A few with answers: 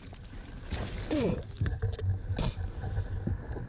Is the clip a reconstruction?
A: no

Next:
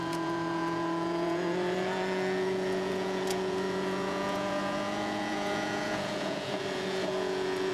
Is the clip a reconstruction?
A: yes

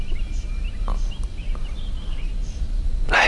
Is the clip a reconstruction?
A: no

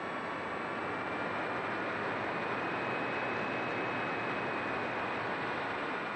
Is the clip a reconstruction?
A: no